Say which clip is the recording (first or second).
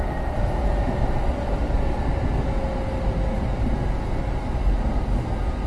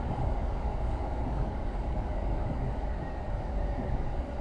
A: first